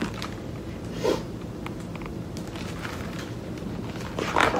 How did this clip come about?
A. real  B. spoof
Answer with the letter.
A